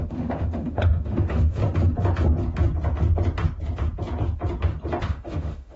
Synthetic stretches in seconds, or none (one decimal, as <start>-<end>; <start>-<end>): 0.0-1.6; 5.0-5.8